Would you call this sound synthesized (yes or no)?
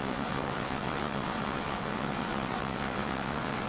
yes